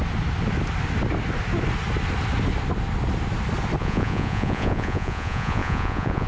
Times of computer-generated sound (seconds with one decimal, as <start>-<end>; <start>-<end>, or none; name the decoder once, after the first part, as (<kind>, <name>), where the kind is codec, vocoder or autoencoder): 3.8-6.3 (vocoder, Vocos)